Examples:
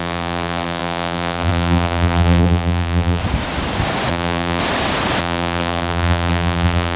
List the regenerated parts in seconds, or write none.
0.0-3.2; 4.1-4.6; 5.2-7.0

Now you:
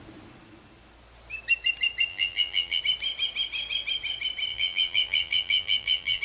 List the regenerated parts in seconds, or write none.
2.1-2.8; 4.5-6.2

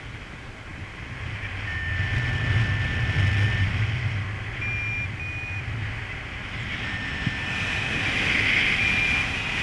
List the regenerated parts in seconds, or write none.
none

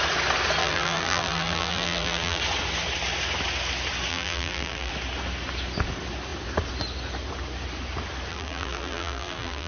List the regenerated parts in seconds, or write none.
0.6-2.4; 4.1-4.9; 8.3-9.7